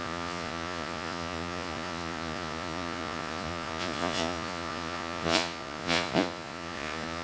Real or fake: fake